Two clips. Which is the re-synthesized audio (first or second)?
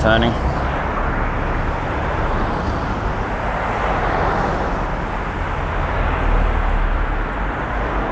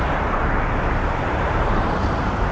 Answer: second